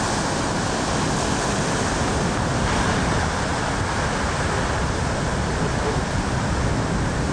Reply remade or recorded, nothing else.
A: recorded